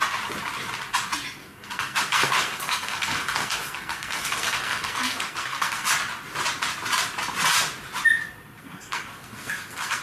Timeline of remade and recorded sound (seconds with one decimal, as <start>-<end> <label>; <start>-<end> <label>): 0.0-1.4 recorded; 1.4-5.9 remade; 5.9-8.6 recorded; 8.6-10.0 remade